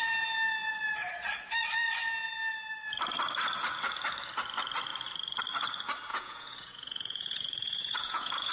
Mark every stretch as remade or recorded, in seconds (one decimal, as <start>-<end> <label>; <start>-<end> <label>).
0.0-6.1 recorded; 6.1-8.5 remade